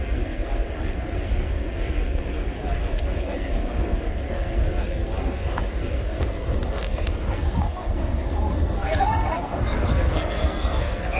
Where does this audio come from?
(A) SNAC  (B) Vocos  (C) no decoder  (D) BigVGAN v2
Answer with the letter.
A